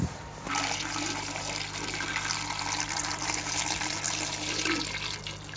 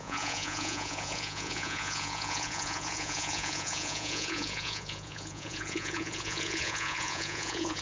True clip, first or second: first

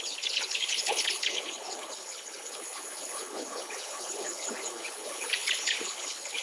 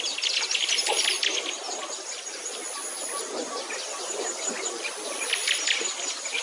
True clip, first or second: second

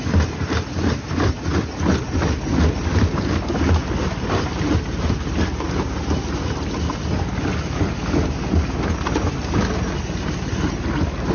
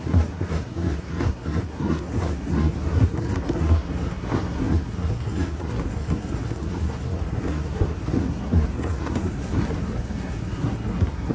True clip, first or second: first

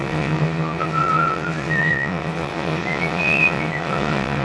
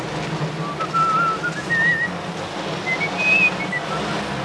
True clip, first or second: second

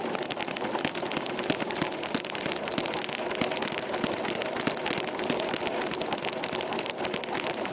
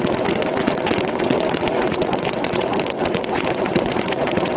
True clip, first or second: first